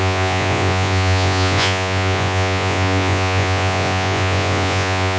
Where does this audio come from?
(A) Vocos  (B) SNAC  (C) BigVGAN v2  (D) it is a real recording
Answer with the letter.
A